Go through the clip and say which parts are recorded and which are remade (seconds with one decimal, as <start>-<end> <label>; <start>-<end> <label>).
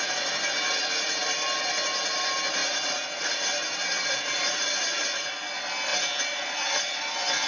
0.0-2.6 recorded; 2.6-4.6 remade; 4.6-7.5 recorded